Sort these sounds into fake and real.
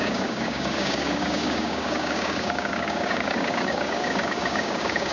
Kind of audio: fake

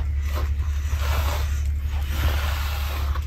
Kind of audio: real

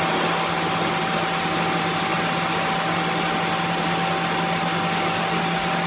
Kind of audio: real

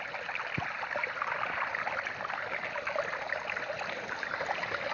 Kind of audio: real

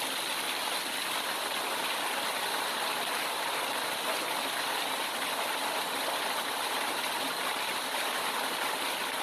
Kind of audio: real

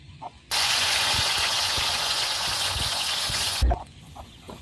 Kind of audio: fake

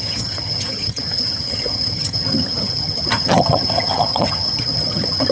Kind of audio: fake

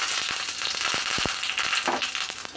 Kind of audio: real